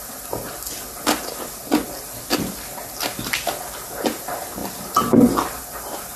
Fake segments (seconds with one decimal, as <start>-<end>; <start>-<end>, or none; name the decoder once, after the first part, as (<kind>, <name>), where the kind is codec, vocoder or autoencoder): none